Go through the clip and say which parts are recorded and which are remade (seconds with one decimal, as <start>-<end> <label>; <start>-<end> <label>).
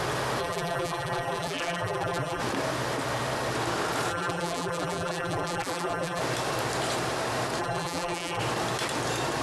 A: 0.0-0.4 recorded; 0.4-2.4 remade; 2.4-4.1 recorded; 4.1-6.2 remade; 6.2-7.6 recorded; 7.6-8.4 remade; 8.4-9.4 recorded